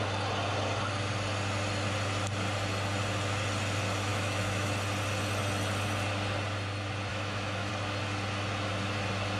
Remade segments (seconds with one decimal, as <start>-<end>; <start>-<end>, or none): 4.1-4.7; 7.1-7.7